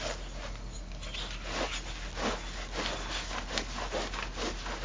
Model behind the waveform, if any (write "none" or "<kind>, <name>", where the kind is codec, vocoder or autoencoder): none